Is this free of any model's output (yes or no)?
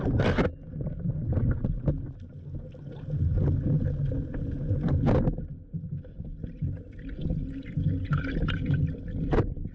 yes